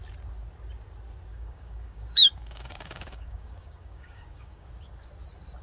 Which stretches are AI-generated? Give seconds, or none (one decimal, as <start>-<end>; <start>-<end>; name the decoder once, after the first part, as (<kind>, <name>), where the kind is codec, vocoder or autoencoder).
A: 1.3-4.7 (codec, DAC)